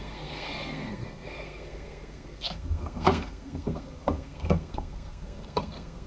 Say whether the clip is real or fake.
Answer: fake